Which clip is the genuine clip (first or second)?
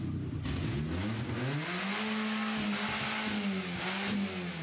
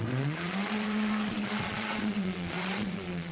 first